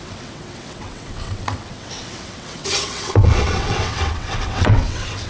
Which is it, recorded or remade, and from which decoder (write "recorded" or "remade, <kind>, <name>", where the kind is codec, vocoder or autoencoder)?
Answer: remade, vocoder, WaveNeXt